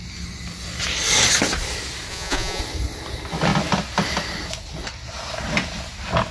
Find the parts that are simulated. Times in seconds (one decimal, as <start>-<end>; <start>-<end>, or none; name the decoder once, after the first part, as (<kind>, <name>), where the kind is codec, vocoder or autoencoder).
2.1-2.6 (vocoder, Vocos)